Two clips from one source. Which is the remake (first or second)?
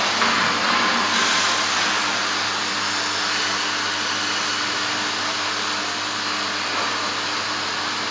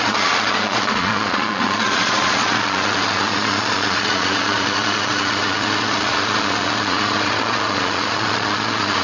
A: second